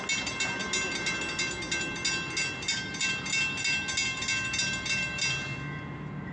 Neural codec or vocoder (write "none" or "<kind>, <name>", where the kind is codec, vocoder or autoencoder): none